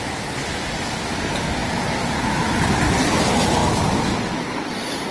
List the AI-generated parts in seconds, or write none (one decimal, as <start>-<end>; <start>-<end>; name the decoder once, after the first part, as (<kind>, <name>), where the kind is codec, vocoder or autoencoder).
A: 3.6-4.2 (autoencoder, DAC-VAE)